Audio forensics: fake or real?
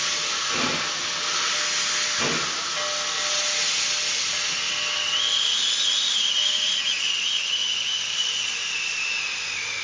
real